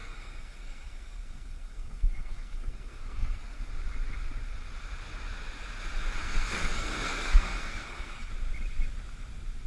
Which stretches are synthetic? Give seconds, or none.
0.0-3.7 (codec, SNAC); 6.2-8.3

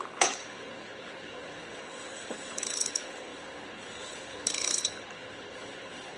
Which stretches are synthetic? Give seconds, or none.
0.0-6.2 (codec, HILCodec)

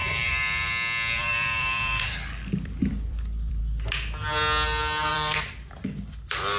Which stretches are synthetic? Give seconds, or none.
0.0-0.7 (vocoder, BigVGAN v2); 1.2-3.6; 5.1-6.6

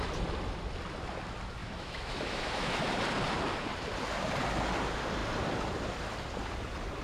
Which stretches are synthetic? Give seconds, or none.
1.6-2.9 (autoencoder, DAC-VAE)